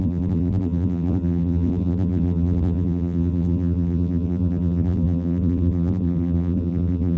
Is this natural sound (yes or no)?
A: no